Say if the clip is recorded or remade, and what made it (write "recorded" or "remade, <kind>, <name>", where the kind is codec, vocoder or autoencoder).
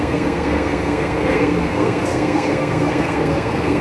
remade, codec, SNAC